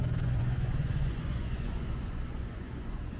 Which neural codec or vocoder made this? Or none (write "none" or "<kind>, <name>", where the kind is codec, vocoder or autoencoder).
vocoder, Vocos